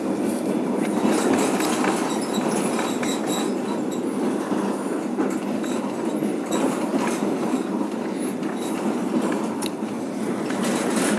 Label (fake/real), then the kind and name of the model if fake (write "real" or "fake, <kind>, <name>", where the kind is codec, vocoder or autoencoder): real